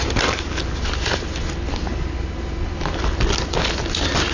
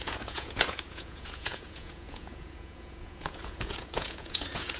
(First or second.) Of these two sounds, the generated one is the second